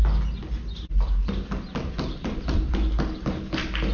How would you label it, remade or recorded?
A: recorded